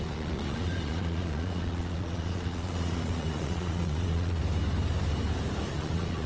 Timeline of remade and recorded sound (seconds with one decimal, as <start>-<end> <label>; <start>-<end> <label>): 0.0-4.4 remade; 4.4-5.7 recorded; 5.7-6.3 remade